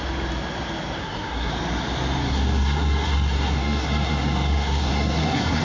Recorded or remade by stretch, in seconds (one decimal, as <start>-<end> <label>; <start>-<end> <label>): 0.0-1.0 recorded; 1.0-1.5 remade; 1.5-2.2 recorded; 2.2-5.6 remade